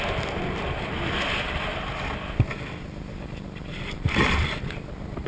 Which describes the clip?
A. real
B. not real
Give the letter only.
A